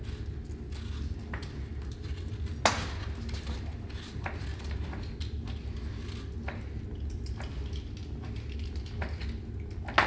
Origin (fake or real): real